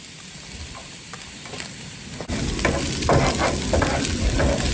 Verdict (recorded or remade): recorded